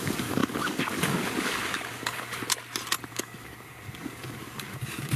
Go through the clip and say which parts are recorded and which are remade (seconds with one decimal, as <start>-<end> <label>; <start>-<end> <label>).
0.0-2.4 remade; 2.4-3.1 recorded; 3.1-5.2 remade